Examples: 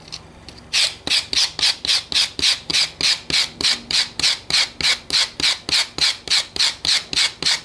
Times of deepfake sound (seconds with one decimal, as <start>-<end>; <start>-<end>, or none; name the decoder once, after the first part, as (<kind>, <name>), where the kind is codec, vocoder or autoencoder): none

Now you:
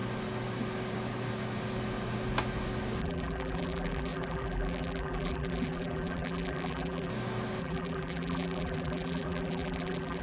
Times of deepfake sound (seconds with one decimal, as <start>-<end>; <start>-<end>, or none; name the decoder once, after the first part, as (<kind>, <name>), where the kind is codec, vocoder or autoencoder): 3.0-7.1 (vocoder, BigVGAN v2); 7.6-10.2

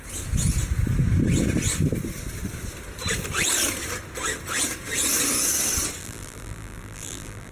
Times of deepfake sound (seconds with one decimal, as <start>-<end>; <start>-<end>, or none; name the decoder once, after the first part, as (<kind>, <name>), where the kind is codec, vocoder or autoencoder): 6.0-7.5 (vocoder, BigVGAN v2)